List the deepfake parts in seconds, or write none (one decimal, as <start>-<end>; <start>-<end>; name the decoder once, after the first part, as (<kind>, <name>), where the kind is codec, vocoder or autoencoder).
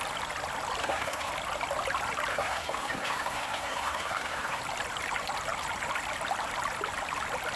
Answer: 0.8-1.3 (codec, SNAC); 2.3-4.6